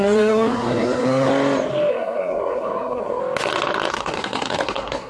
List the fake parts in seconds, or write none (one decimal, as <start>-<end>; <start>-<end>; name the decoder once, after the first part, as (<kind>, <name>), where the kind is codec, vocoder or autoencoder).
0.0-1.3 (codec, SNAC); 1.9-3.2; 3.9-5.1